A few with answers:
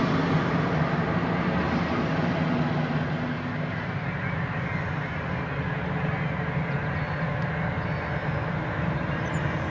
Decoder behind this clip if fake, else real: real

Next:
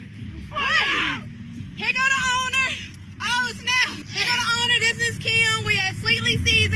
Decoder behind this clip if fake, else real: real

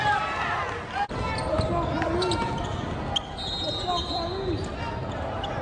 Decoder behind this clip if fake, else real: real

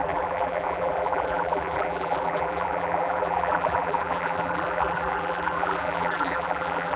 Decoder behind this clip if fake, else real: fake, vocoder, BigVGAN v2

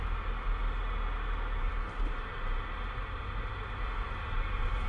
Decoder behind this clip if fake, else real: real